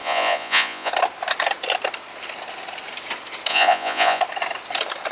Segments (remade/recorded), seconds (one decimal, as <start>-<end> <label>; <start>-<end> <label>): 0.0-0.9 remade; 0.9-3.5 recorded; 3.5-4.2 remade; 4.2-5.1 recorded